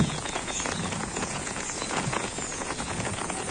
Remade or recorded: remade